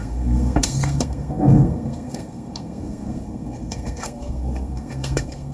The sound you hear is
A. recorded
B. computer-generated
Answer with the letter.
B